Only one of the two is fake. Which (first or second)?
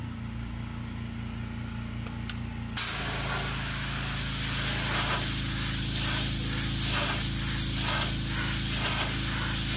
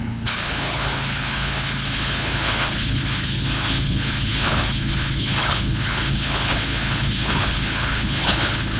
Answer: second